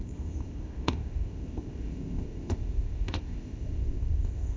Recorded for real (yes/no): no